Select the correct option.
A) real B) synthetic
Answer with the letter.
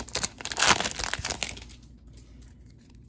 A